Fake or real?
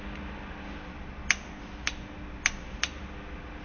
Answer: real